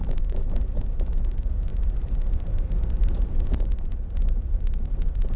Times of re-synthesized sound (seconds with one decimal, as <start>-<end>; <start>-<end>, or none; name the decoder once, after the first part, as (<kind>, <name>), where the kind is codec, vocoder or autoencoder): none